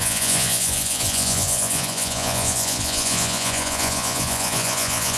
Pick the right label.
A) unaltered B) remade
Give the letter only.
B